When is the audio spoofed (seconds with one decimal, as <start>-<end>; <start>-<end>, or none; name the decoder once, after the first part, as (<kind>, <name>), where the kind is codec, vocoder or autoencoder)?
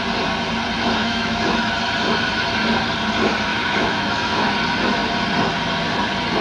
1.0-1.7 (autoencoder, DAC-VAE); 3.5-4.5